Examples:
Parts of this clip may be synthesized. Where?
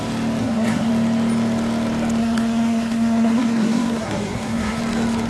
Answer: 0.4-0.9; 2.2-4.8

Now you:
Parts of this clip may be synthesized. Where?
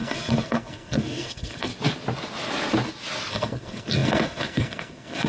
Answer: 0.0-1.7; 3.3-5.3